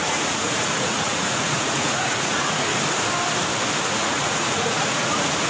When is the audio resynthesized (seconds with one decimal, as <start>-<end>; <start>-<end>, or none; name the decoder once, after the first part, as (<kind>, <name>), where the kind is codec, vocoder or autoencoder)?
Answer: 0.0-2.7 (vocoder, Vocos); 3.9-5.5